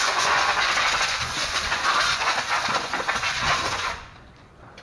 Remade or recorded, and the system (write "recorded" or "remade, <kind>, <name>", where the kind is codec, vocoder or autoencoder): remade, vocoder, Vocos